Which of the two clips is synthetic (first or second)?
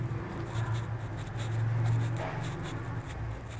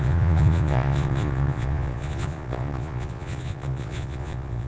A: second